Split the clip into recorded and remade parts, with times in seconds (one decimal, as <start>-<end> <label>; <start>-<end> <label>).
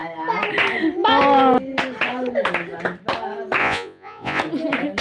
0.0-3.6 recorded; 3.6-4.4 remade; 4.4-5.0 recorded